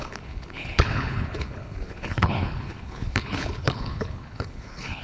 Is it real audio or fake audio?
fake